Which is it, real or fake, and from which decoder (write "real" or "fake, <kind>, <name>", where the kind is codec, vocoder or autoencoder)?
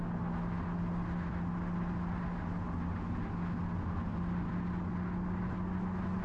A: real